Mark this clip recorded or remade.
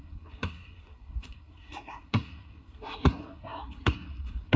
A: remade